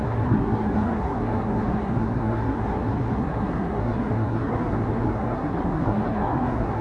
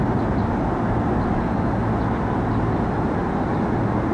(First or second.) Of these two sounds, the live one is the second